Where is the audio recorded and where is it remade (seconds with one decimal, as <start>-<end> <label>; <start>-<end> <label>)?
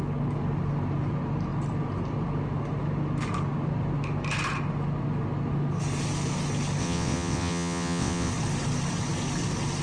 0.0-6.8 recorded; 6.8-8.3 remade; 8.3-9.8 recorded